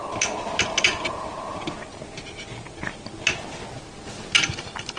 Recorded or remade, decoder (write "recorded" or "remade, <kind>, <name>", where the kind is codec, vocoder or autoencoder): recorded